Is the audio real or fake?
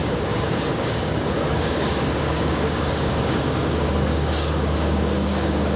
fake